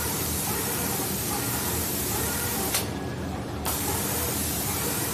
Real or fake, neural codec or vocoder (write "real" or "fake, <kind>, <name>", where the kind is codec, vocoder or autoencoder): fake, vocoder, BigVGAN v2